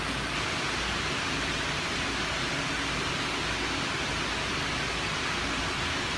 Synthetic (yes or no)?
no